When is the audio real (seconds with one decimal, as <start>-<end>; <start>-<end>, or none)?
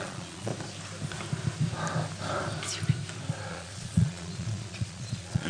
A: 0.5-3.5